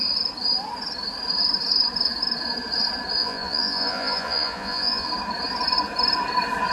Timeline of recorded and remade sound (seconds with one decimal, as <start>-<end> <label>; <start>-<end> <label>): 0.0-3.2 recorded; 3.2-5.1 remade; 5.1-6.7 recorded